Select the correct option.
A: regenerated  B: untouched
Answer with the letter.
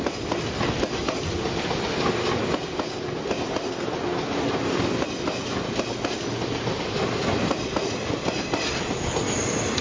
B